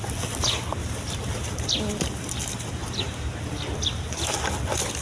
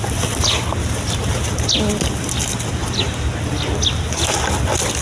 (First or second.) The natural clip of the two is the second